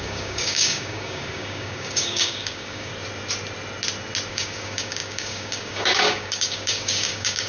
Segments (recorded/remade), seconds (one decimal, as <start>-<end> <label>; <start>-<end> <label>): 0.0-2.9 remade; 2.9-4.3 recorded; 4.3-7.5 remade

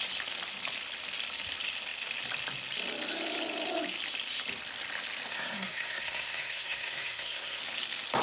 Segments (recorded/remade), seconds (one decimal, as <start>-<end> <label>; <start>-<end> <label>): 0.0-5.3 recorded; 5.3-7.6 remade; 7.6-8.2 recorded

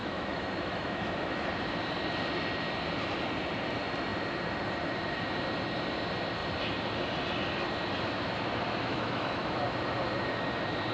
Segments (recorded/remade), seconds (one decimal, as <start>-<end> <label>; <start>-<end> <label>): 0.0-1.5 remade; 1.5-8.9 recorded; 8.9-9.6 remade; 9.6-10.9 recorded

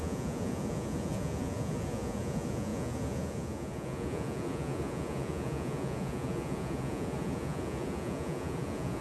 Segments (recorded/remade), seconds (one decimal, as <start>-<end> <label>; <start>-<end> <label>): 0.0-9.0 remade

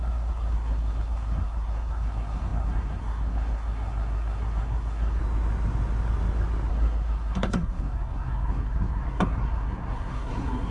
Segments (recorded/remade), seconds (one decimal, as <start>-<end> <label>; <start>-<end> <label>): 0.0-5.2 remade; 5.2-6.7 recorded; 6.7-10.7 remade

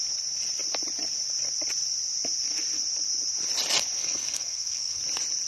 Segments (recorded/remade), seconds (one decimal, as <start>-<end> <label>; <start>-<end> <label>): 0.0-4.0 recorded; 4.0-5.0 remade; 5.0-5.5 recorded

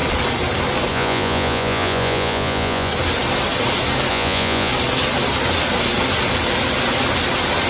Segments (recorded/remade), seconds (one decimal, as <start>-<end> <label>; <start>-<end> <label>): 0.0-0.9 recorded; 0.9-2.9 remade; 2.9-4.1 recorded; 4.1-4.7 remade; 4.7-7.7 recorded

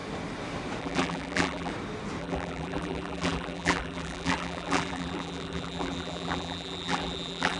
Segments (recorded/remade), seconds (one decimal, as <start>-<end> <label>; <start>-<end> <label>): 0.0-0.8 recorded; 0.8-1.7 remade; 1.7-2.2 recorded; 2.2-7.6 remade